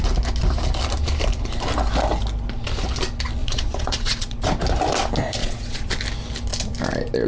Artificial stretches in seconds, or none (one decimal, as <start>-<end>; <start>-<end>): 3.4-4.6; 5.4-5.9